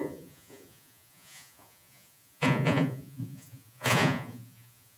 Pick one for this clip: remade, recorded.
remade